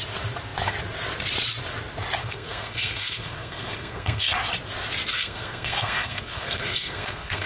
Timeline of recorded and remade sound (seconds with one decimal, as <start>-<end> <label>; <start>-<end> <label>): 0.0-2.2 recorded; 2.2-4.3 remade; 4.3-5.1 recorded; 5.1-7.5 remade